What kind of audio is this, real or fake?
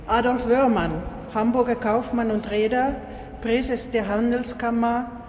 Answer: real